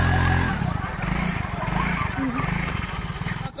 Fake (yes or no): no